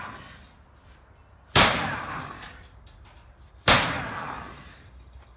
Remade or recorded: recorded